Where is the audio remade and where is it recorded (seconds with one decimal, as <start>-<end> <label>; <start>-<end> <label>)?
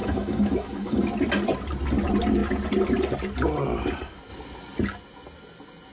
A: 0.0-1.0 remade; 1.0-5.9 recorded